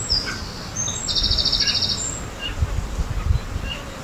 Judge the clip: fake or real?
real